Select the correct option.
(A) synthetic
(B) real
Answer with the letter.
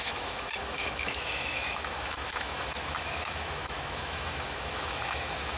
A